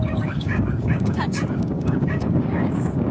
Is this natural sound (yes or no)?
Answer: no